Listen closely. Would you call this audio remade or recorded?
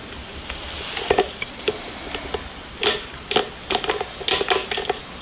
recorded